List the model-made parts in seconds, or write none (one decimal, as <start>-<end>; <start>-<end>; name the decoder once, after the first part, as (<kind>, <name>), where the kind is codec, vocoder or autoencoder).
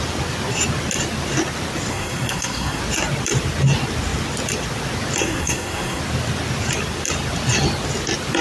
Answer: 1.9-2.8 (codec, SNAC); 5.2-6.0